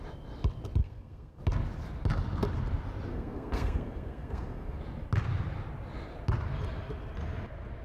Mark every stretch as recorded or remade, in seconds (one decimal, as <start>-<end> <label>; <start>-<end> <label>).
0.0-0.8 recorded; 0.8-1.4 remade; 1.4-3.1 recorded; 3.1-4.8 remade; 4.8-7.8 recorded

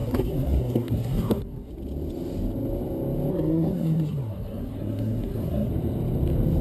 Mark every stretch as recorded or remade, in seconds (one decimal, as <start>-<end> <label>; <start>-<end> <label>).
0.0-1.7 remade; 1.7-3.3 recorded; 3.3-5.7 remade; 5.7-6.6 recorded

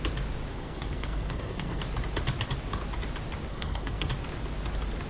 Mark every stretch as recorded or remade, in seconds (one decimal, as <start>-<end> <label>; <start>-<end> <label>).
0.0-0.5 recorded; 0.5-1.8 remade; 1.8-3.5 recorded; 3.5-4.1 remade; 4.1-5.1 recorded

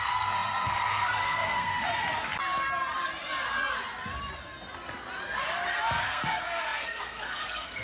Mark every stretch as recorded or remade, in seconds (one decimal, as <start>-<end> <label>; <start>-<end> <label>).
0.0-1.7 remade; 1.7-6.0 recorded; 6.0-7.8 remade

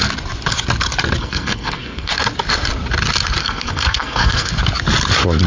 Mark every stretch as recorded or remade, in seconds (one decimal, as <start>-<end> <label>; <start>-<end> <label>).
0.0-1.2 recorded; 1.2-2.1 remade; 2.1-3.4 recorded; 3.4-4.5 remade; 4.5-5.5 recorded

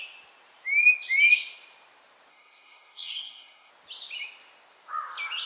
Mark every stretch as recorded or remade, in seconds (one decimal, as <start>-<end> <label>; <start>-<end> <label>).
0.0-2.3 recorded; 2.3-3.7 remade; 3.7-5.5 recorded